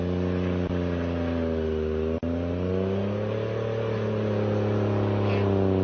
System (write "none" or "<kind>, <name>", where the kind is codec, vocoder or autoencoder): none